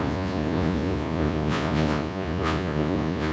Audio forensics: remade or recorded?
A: remade